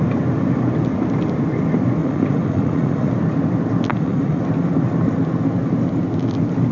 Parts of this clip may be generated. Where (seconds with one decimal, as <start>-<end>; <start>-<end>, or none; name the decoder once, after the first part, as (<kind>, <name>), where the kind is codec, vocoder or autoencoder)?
2.0-3.1 (vocoder, Vocos); 3.9-4.4